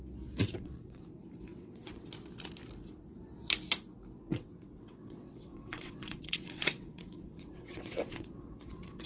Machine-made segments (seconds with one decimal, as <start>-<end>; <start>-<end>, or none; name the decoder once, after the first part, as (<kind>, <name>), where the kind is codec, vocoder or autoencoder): 0.4-1.0 (vocoder, WaveNeXt); 1.5-2.1; 4.3-9.1